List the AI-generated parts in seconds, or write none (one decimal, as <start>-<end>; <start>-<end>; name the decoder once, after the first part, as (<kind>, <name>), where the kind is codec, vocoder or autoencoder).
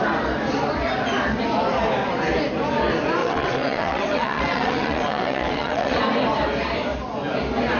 3.2-6.0 (vocoder, WaveNeXt)